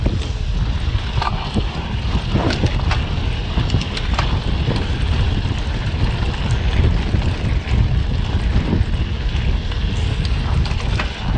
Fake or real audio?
real